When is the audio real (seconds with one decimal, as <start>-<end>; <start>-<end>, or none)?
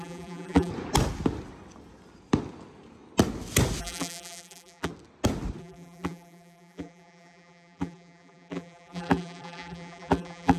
0.7-3.8; 4.9-5.6